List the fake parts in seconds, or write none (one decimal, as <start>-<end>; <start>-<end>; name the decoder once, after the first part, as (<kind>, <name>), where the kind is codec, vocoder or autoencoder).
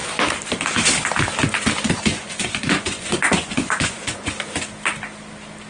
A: 2.1-4.3 (vocoder, Vocos)